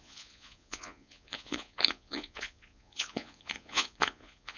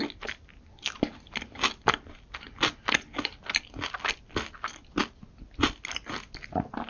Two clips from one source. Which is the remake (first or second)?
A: first